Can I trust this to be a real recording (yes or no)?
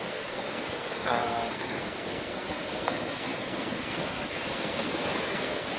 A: no